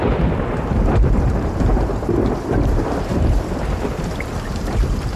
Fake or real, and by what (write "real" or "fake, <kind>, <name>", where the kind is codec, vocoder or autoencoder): fake, vocoder, BigVGAN v2